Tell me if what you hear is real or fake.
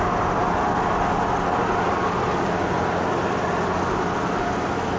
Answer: real